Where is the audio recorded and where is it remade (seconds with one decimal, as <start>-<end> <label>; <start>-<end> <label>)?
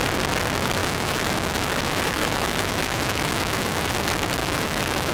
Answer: 0.0-0.8 recorded; 0.8-3.9 remade; 3.9-4.4 recorded; 4.4-5.1 remade